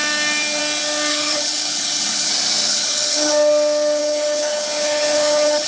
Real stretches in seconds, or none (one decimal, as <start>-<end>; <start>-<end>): 0.0-1.1; 2.3-2.7; 3.3-4.0